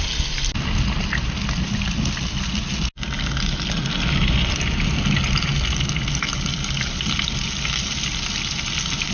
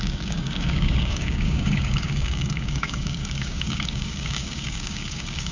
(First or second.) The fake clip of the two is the second